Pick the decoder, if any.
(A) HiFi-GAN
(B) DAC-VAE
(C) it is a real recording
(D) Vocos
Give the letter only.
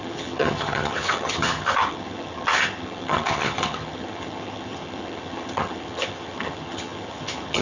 A